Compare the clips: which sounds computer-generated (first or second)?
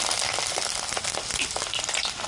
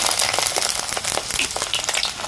first